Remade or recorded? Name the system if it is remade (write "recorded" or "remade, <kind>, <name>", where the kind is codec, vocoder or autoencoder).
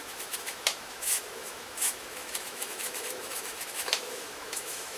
remade, autoencoder, DAC-VAE